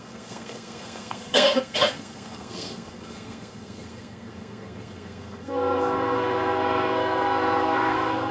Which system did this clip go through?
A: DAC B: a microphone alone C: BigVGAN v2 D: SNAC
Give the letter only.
D